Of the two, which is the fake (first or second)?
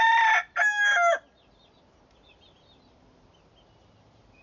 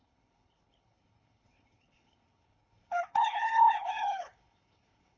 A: second